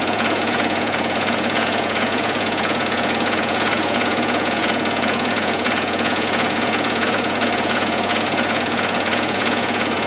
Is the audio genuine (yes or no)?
no